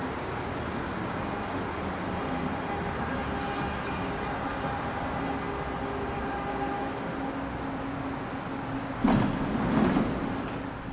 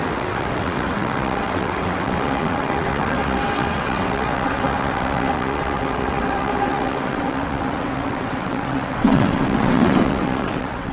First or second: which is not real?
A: second